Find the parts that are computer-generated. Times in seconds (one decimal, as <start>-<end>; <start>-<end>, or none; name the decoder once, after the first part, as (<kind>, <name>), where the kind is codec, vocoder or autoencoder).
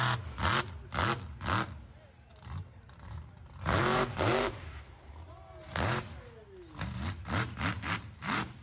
2.3-5.1 (vocoder, BigVGAN v2)